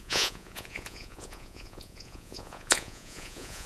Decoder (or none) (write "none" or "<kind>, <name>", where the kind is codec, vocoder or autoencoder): vocoder, Vocos